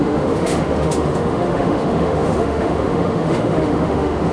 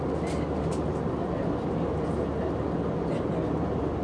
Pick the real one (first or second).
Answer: second